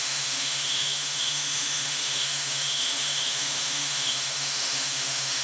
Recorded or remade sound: remade